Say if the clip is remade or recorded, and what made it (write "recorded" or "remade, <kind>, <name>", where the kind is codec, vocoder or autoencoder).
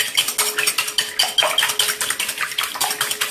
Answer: recorded